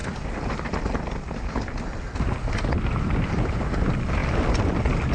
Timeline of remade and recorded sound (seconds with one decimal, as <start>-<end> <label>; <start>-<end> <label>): 0.0-5.1 recorded